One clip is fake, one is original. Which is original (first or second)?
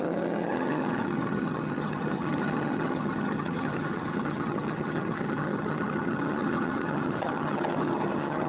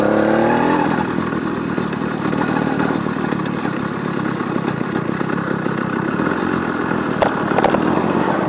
second